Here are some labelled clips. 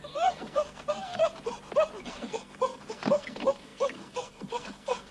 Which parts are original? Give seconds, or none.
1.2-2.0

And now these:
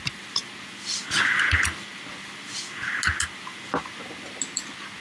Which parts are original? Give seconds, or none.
0.0-5.0

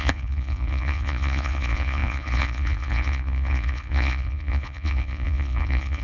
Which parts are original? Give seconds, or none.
none

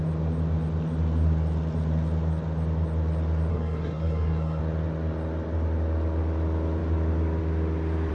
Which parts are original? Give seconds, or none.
0.0-3.5; 4.6-8.1

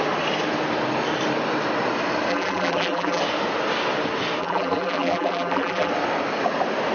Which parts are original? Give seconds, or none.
0.0-2.3; 3.2-4.4; 5.9-6.9

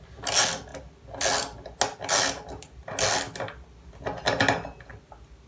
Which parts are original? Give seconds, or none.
0.0-5.5

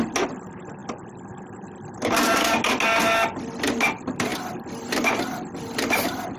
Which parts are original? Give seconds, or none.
0.0-6.4

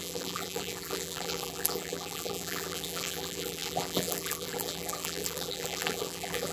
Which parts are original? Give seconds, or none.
none